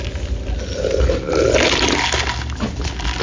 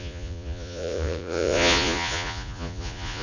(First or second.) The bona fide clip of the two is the first